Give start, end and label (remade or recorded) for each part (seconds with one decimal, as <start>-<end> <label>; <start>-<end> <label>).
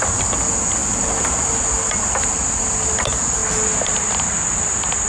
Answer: 0.0-5.1 recorded